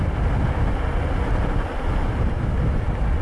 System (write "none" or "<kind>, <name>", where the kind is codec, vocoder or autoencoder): none